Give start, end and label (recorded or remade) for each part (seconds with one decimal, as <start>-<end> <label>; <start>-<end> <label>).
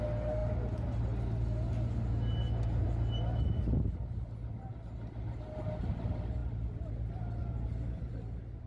0.0-7.4 recorded; 7.4-8.1 remade; 8.1-8.7 recorded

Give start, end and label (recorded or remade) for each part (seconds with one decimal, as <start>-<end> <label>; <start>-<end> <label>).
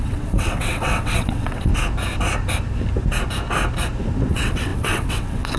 0.0-1.7 remade; 1.7-4.3 recorded; 4.3-5.6 remade